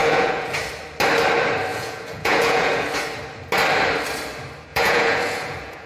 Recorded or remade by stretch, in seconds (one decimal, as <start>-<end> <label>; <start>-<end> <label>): 0.0-0.6 remade; 0.6-1.7 recorded; 1.7-2.9 remade; 2.9-4.7 recorded; 4.7-5.9 remade